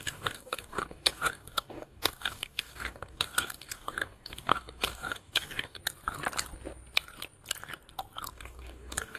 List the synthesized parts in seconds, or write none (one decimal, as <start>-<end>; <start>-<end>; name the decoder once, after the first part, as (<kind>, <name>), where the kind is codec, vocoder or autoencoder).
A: 0.0-5.8 (codec, DAC); 8.3-9.2